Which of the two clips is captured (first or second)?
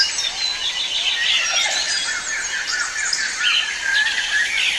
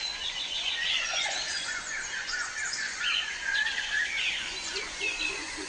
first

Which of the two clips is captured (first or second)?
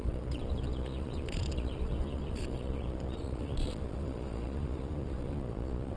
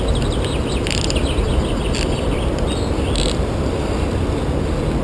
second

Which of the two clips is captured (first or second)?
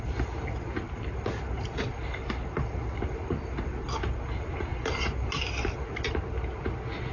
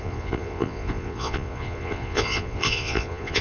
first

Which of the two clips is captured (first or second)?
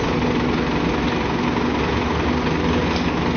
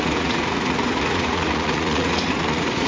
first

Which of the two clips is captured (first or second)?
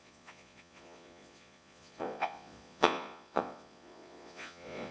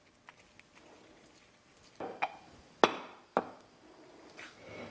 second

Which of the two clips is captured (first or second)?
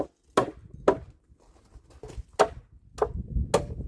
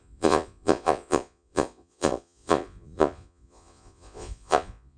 first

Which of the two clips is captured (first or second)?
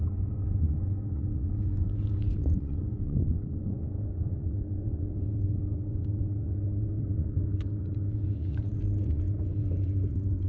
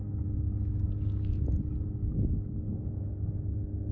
second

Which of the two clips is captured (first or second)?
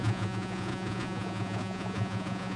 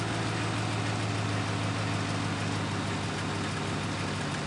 second